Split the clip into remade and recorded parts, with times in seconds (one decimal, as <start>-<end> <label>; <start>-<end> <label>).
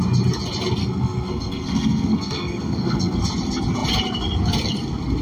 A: 0.0-0.8 recorded; 0.8-3.2 remade; 3.2-5.2 recorded